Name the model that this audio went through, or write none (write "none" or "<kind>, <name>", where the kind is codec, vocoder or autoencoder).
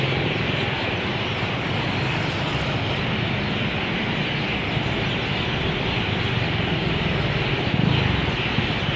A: none